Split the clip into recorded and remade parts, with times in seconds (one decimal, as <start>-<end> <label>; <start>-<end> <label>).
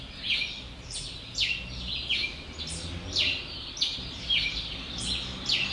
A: 0.0-5.7 remade